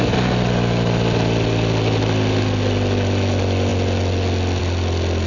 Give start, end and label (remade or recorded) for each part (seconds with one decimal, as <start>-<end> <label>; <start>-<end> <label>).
0.0-5.3 recorded